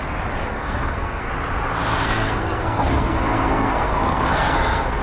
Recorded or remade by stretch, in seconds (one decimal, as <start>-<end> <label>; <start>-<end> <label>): 0.0-0.4 recorded; 0.4-1.3 remade; 1.3-1.9 recorded; 1.9-5.0 remade